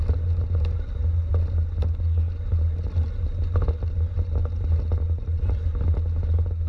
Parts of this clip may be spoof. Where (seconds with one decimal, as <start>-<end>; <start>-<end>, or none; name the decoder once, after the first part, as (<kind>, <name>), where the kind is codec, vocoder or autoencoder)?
none

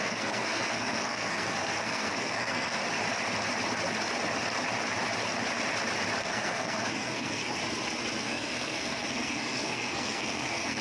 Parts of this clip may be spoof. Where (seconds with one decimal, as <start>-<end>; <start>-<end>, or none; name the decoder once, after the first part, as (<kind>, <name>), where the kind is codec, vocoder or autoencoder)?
0.0-2.8 (codec, SNAC); 6.2-7.6; 8.2-10.8

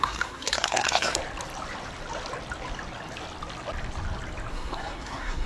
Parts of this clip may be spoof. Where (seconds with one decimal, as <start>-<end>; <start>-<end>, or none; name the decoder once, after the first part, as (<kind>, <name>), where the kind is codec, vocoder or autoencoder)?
0.0-1.2 (codec, SNAC); 4.5-5.5